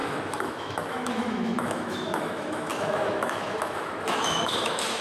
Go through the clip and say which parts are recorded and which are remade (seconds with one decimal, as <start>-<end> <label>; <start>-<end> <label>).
0.0-5.0 remade